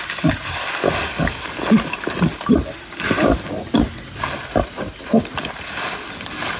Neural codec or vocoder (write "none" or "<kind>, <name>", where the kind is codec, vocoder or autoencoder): vocoder, BigVGAN v2